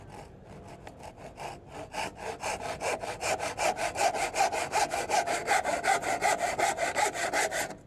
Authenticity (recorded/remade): recorded